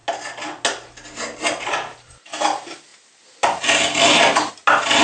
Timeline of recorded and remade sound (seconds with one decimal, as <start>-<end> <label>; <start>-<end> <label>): 0.0-5.0 recorded

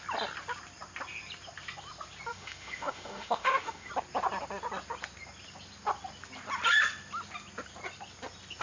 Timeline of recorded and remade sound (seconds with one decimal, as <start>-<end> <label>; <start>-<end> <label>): 0.0-2.3 recorded; 2.3-3.9 remade; 3.9-8.6 recorded

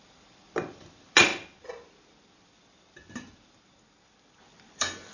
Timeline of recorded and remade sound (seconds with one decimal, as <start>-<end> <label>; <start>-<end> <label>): 0.0-5.1 recorded